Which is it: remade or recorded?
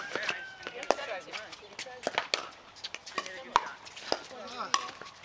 recorded